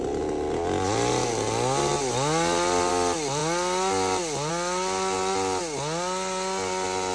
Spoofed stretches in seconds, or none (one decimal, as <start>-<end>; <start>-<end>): none